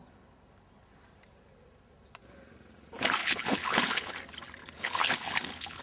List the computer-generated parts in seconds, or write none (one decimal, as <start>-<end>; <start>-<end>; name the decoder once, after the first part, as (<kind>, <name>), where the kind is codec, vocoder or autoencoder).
3.2-4.1 (codec, HILCodec); 4.6-5.8